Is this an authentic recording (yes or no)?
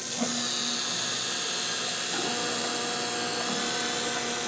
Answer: yes